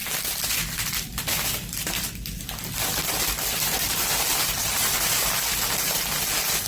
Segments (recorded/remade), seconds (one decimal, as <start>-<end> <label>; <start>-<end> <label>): 0.0-4.6 recorded; 4.6-5.3 remade; 5.3-6.7 recorded